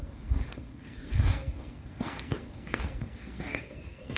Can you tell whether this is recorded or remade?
remade